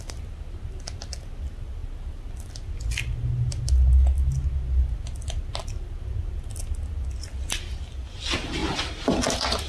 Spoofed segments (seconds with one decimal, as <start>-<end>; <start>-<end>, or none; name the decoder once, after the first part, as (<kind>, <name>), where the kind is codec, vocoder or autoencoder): none